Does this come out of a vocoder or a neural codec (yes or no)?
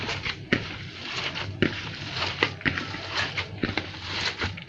yes